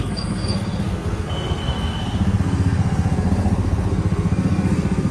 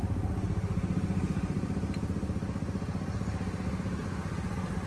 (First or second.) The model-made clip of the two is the first